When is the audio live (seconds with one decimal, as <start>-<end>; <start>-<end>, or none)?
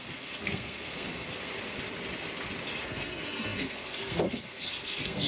1.5-2.8